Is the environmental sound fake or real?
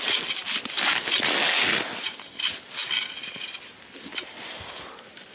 real